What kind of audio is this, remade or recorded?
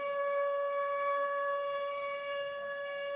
remade